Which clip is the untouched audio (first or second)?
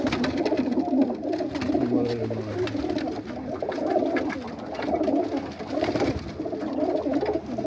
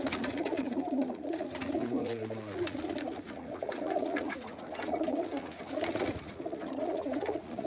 first